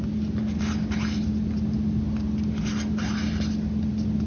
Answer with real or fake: real